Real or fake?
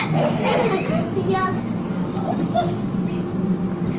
real